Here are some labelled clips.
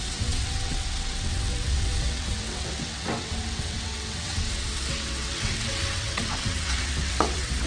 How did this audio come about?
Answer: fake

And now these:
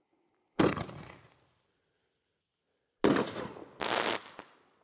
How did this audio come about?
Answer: real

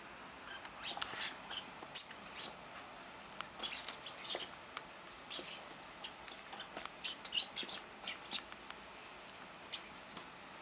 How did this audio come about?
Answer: real